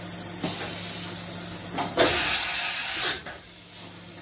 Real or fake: real